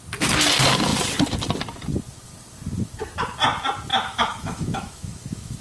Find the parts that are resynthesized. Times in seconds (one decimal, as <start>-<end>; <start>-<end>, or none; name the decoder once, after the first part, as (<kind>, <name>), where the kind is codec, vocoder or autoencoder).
3.9-5.6 (autoencoder, DAC-VAE)